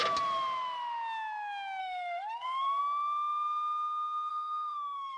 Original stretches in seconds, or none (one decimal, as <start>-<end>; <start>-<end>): 0.0-1.8; 2.8-4.3